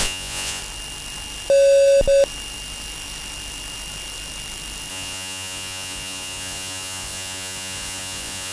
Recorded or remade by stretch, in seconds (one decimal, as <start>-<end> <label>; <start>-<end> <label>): 0.0-0.6 remade; 0.6-4.9 recorded; 4.9-8.5 remade

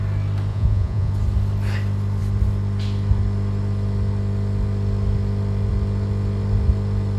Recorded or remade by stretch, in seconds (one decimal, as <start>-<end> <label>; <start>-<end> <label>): 0.0-0.5 recorded; 0.5-1.1 remade; 1.1-7.2 recorded

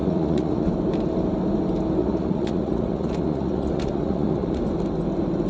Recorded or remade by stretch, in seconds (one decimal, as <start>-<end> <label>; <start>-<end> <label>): 0.0-0.7 remade; 0.7-2.0 recorded; 2.0-4.6 remade; 4.6-5.5 recorded

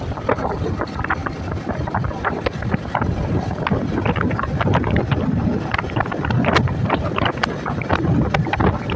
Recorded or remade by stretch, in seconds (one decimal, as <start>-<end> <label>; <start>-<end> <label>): 0.0-9.0 recorded

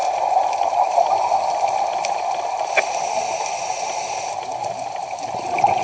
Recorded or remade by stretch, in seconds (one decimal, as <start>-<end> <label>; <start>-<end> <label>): 0.0-5.8 recorded

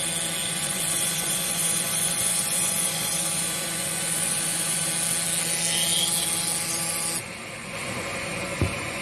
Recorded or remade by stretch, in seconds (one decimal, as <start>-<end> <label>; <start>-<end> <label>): 0.0-0.4 recorded; 0.4-4.9 remade; 4.9-7.6 recorded; 7.6-9.0 remade

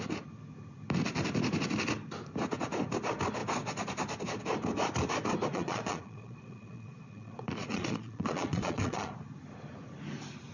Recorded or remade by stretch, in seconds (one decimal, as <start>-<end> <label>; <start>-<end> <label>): 0.0-5.5 recorded; 5.5-9.1 remade; 9.1-10.5 recorded

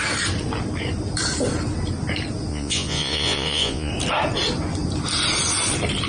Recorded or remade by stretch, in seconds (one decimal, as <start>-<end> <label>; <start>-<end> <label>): 0.0-2.5 recorded; 2.5-3.9 remade; 3.9-6.1 recorded